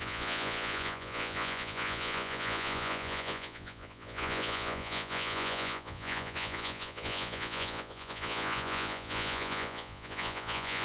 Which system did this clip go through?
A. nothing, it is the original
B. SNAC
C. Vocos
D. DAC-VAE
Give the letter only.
C